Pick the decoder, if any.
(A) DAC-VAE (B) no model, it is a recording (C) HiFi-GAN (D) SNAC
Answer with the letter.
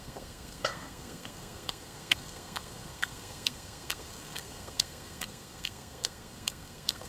D